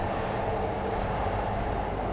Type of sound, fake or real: real